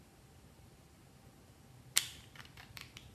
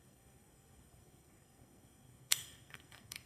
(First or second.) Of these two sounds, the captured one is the first